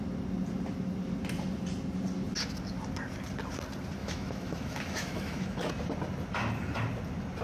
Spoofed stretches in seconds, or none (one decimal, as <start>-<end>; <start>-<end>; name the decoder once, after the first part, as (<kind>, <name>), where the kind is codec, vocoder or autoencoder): 4.0-5.7 (autoencoder, DAC-VAE)